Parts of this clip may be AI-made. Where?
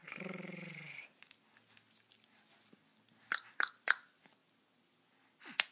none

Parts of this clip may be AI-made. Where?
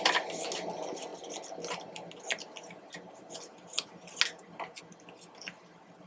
none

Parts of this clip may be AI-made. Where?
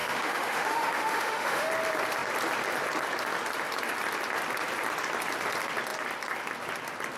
0.0-1.7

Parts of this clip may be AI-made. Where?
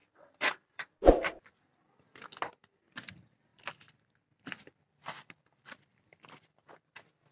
0.0-1.4; 3.5-4.5